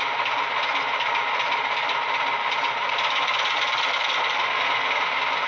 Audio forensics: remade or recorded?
recorded